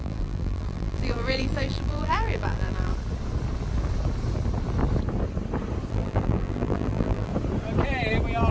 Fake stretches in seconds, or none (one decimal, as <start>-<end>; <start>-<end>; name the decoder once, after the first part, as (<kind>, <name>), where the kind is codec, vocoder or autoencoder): 0.0-2.9 (vocoder, BigVGAN v2); 5.9-7.3